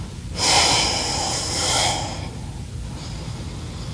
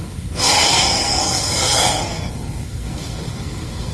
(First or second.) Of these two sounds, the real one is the first